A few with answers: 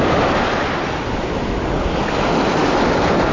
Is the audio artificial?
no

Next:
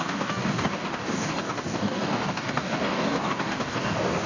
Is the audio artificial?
yes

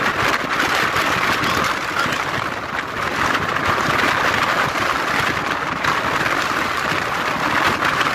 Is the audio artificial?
no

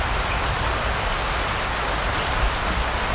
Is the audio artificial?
no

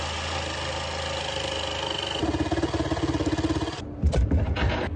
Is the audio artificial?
no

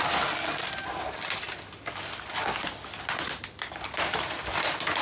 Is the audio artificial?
no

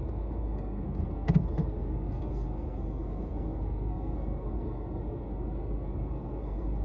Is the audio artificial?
yes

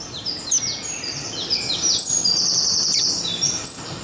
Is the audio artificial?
no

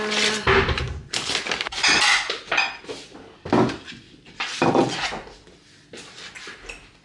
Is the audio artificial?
no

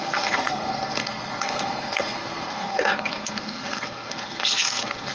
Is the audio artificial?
yes